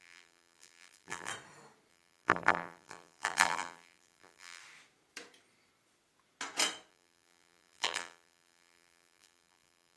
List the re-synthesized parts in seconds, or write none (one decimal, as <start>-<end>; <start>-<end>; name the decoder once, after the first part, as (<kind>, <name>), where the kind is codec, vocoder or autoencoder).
0.0-1.3 (vocoder, BigVGAN v2); 1.9-4.6; 6.9-10.0